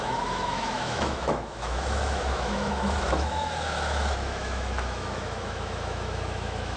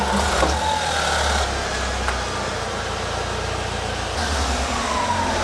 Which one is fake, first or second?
first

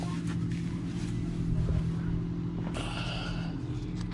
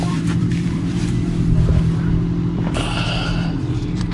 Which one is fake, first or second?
second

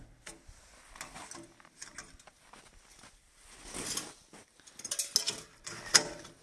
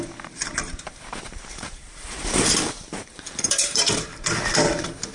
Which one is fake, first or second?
second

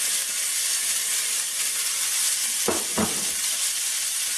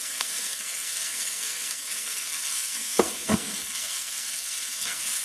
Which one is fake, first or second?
second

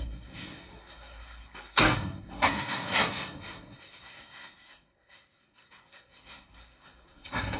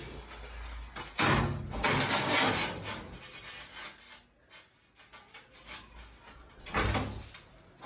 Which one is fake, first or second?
first